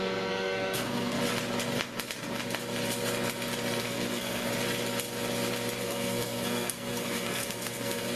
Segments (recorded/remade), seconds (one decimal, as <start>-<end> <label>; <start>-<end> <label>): 0.0-1.2 remade; 1.2-3.8 recorded; 3.8-4.5 remade; 4.5-5.8 recorded; 5.8-8.2 remade